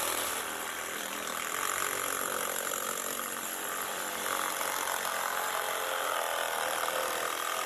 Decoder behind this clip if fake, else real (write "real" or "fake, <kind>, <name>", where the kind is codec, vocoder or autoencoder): fake, vocoder, BigVGAN v2